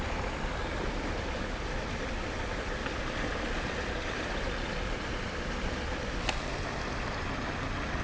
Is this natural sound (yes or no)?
yes